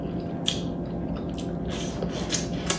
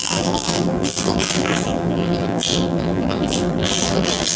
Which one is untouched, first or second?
first